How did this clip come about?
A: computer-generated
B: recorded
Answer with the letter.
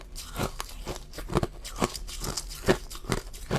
B